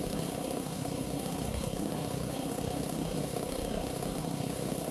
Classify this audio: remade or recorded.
remade